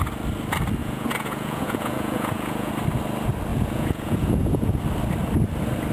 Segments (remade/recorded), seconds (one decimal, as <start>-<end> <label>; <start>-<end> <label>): 0.0-0.8 recorded; 0.8-2.7 remade; 2.7-3.5 recorded; 3.5-4.8 remade; 4.8-5.9 recorded